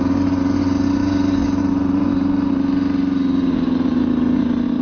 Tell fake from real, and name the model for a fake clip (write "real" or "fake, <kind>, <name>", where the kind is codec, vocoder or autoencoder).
real